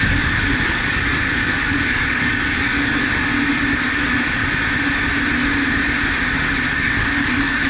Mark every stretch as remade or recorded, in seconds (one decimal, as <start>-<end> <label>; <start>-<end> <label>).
0.0-3.3 remade; 3.3-3.9 recorded; 3.9-4.4 remade; 4.4-6.7 recorded; 6.7-7.7 remade